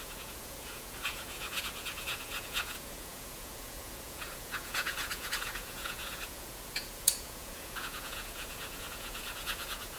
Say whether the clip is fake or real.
fake